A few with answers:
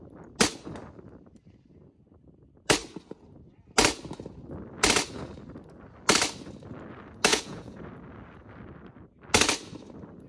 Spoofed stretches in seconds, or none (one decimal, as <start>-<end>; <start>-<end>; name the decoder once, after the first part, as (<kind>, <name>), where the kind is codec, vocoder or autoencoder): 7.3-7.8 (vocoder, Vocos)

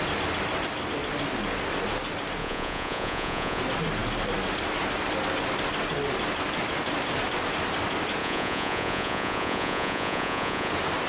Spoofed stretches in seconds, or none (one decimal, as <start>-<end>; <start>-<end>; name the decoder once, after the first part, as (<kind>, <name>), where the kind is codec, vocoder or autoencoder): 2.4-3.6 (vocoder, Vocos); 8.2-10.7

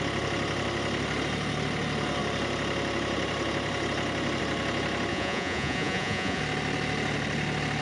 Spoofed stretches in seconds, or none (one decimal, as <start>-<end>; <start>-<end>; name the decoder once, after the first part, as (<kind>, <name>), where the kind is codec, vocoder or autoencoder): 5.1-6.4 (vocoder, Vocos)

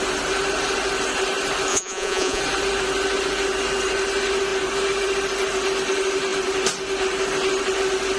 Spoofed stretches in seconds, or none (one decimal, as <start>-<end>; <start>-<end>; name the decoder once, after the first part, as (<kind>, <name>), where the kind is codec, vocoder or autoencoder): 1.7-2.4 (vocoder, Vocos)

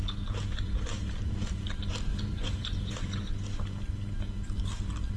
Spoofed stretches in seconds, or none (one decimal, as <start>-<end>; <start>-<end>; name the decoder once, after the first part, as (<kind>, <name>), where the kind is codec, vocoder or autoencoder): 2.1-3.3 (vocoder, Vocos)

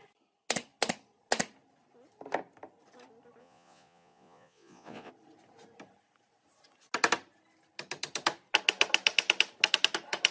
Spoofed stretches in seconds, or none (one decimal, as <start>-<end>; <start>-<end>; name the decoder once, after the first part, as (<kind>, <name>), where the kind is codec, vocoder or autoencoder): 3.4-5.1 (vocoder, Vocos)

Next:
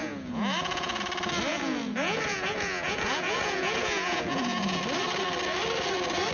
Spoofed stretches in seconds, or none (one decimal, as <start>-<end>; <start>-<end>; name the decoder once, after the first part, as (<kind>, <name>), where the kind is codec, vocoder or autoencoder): 0.0-1.0 (vocoder, Vocos); 1.5-4.8